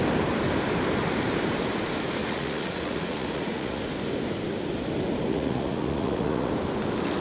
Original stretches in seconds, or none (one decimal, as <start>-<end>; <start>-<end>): 0.0-2.2; 3.8-5.3; 6.5-7.2

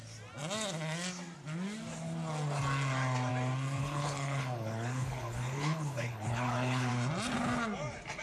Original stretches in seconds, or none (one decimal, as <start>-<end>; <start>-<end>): 0.0-3.8; 6.9-8.2

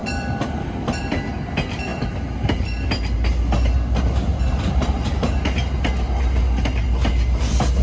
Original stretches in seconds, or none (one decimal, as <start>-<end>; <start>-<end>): 0.0-7.8

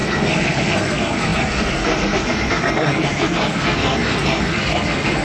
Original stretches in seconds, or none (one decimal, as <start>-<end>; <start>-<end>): none